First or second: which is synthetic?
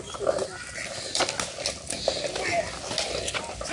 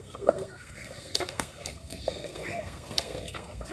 second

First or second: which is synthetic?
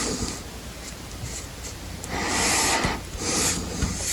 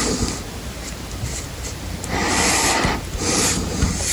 second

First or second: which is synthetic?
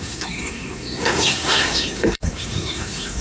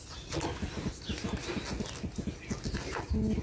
first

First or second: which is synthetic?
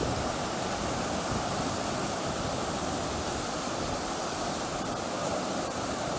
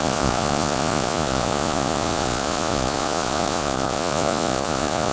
second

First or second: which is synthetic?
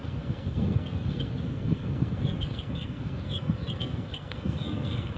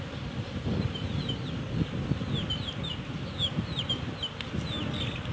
first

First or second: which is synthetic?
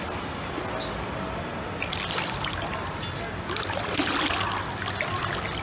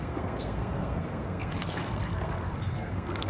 second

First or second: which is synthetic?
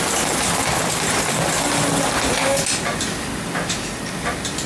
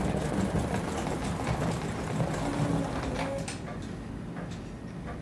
first